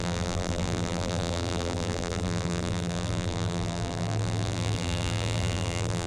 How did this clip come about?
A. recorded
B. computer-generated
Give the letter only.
B